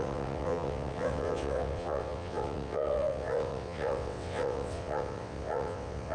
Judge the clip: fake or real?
fake